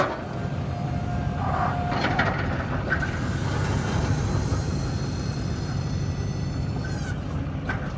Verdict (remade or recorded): recorded